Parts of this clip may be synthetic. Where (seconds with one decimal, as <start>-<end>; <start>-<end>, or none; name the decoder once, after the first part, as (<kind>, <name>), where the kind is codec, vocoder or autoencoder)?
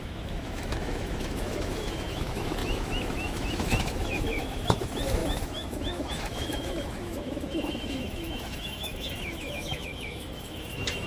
0.0-11.1 (autoencoder, DAC-VAE)